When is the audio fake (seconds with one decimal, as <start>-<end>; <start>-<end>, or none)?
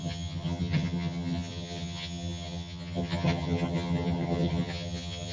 0.0-5.3